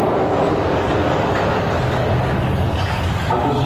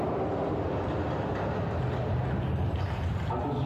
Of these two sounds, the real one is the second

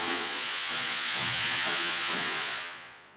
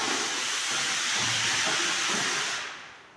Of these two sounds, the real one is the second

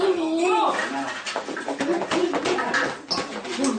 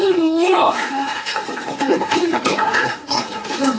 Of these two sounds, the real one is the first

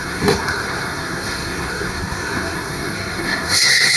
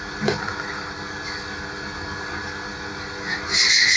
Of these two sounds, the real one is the second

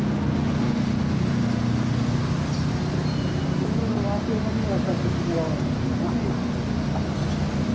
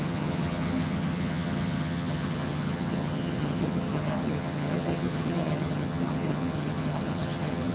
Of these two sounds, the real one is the first